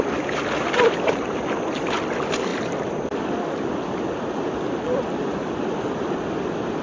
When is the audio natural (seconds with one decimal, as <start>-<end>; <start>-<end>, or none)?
0.0-6.8